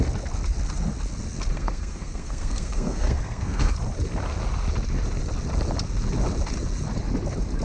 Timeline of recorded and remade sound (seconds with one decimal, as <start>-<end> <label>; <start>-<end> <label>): 0.0-1.5 recorded; 1.5-3.7 remade; 3.7-7.6 recorded